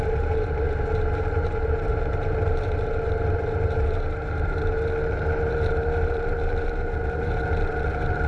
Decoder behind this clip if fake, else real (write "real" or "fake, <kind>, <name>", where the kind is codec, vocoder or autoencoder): fake, vocoder, BigVGAN v2